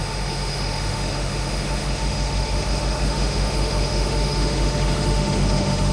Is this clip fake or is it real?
fake